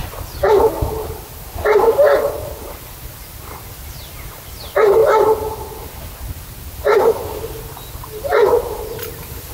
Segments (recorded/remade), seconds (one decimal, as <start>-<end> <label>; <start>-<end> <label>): 0.0-9.5 recorded